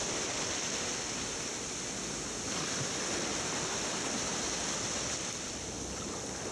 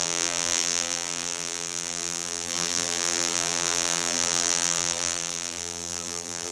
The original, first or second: first